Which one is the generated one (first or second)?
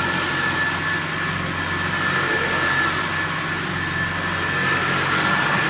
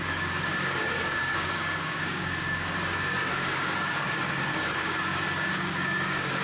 second